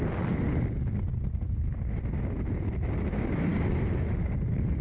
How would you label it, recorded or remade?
recorded